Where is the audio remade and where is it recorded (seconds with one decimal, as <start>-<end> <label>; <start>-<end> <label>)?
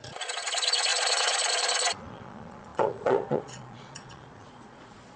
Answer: 0.0-5.2 remade